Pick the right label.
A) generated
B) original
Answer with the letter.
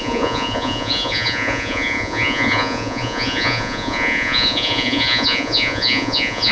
A